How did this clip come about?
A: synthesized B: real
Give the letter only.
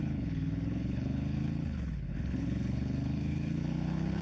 A